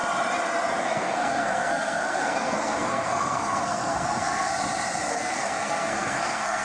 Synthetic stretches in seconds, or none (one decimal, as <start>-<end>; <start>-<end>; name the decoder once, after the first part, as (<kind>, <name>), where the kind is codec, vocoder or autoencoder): 0.8-4.5 (codec, SNAC); 5.1-6.6